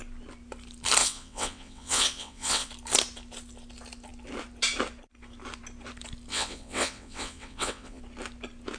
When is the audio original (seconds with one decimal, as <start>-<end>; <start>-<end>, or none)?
0.0-1.0; 2.7-6.3; 8.0-8.8